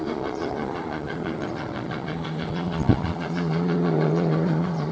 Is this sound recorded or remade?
remade